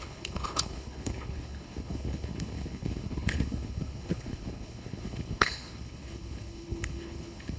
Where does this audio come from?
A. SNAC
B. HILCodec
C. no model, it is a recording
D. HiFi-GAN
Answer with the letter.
B